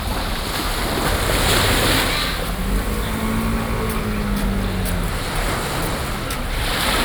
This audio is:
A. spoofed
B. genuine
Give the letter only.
B